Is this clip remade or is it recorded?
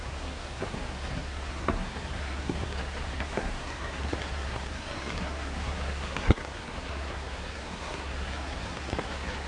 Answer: remade